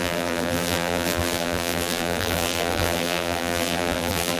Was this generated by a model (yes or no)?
yes